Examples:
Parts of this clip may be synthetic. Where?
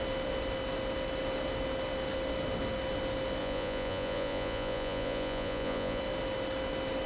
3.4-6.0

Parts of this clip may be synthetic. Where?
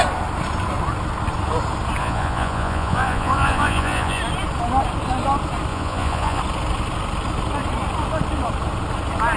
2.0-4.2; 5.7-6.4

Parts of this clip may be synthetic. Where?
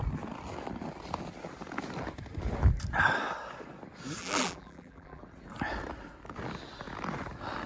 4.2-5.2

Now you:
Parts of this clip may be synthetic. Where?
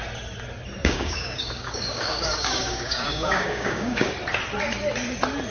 0.8-4.1